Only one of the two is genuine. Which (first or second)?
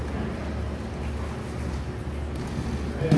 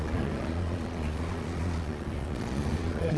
first